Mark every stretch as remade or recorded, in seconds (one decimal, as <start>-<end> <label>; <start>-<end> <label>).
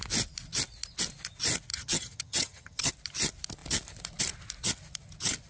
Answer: 0.0-1.7 recorded; 1.7-2.9 remade; 2.9-5.5 recorded